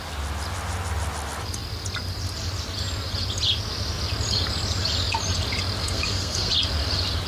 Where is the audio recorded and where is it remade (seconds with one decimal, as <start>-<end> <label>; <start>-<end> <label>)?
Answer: 0.0-5.8 recorded; 5.8-6.5 remade; 6.5-7.3 recorded